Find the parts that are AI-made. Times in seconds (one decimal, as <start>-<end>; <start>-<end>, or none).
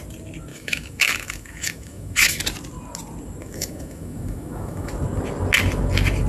0.5-2.4; 3.4-4.9